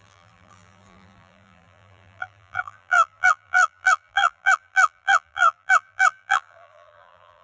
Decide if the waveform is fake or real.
fake